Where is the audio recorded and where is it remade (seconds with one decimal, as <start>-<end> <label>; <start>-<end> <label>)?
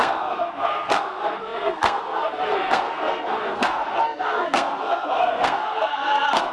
0.0-6.5 remade